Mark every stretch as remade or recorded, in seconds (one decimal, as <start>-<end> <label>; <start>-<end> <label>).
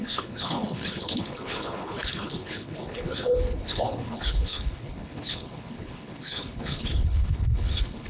0.0-8.1 remade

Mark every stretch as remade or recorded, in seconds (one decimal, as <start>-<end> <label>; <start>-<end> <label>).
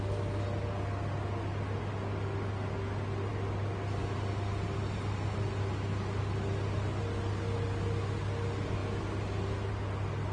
0.0-10.3 recorded